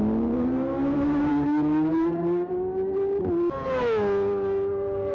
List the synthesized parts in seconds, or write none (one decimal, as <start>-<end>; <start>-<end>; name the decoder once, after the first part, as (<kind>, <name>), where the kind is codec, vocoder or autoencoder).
1.3-2.5 (codec, DAC)